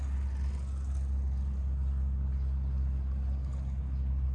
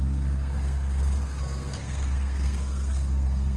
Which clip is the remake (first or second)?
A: second